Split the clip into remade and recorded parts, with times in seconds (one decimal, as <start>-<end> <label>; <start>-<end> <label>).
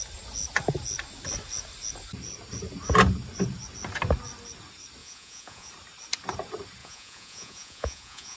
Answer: 0.0-5.0 recorded; 5.0-5.7 remade; 5.7-6.8 recorded; 6.8-8.4 remade